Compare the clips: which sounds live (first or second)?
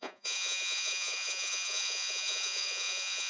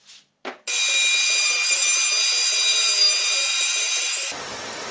second